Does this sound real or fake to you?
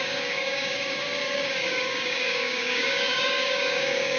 fake